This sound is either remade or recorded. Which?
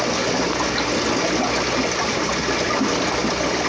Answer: recorded